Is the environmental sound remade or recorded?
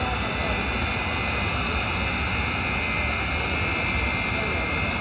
recorded